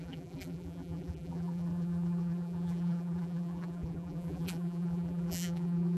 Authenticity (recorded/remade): remade